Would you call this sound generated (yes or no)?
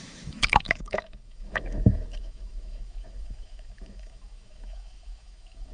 yes